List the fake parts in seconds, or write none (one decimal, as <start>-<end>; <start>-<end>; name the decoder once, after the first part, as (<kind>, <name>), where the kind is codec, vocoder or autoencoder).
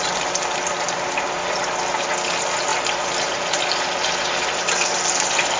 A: none